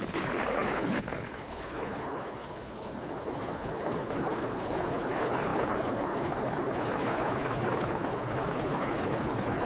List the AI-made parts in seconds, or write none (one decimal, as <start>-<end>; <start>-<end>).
0.0-9.7